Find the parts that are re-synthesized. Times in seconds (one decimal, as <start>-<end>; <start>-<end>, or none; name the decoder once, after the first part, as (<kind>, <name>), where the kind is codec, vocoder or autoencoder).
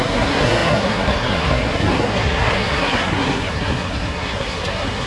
0.0-5.1 (codec, SNAC)